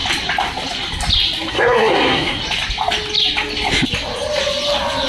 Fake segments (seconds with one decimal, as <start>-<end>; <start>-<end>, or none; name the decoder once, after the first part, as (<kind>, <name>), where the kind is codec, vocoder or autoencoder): 1.5-2.4 (codec, SNAC)